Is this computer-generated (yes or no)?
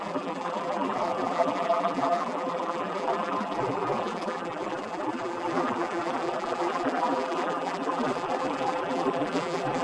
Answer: yes